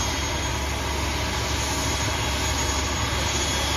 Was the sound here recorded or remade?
recorded